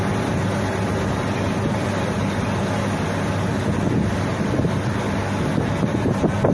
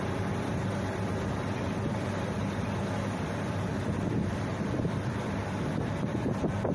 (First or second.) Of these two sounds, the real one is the first